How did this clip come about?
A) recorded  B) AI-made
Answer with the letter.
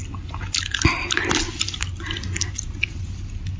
A